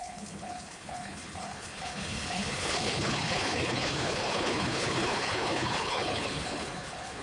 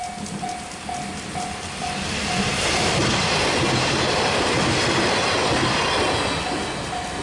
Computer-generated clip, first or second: first